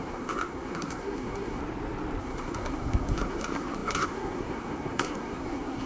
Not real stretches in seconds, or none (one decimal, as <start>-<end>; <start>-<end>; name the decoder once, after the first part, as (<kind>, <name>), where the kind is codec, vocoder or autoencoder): 0.0-1.6 (codec, SNAC); 2.2-5.9